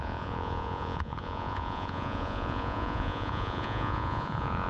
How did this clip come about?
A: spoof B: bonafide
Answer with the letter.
A